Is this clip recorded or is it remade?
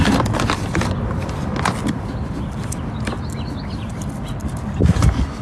remade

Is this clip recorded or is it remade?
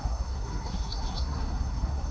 remade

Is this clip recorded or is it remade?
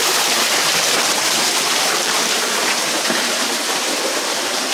remade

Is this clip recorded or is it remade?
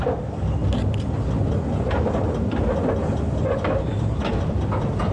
recorded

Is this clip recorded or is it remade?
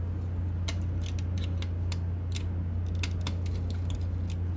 recorded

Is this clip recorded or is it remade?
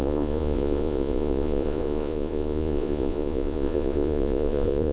remade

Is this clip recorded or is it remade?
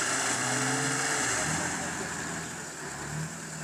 remade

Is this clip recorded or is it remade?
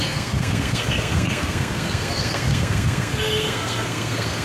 remade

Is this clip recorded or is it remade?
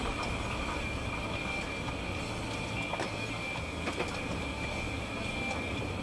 recorded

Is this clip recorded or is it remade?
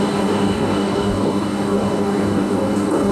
remade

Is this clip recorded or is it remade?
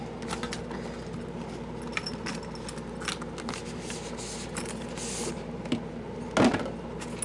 recorded